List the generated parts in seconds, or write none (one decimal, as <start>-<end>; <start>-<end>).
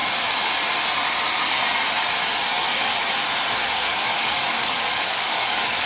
3.5-5.9